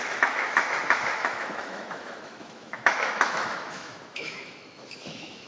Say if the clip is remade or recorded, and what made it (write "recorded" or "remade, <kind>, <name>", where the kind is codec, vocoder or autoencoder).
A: remade, autoencoder, DAC-VAE